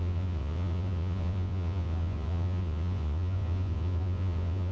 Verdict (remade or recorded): remade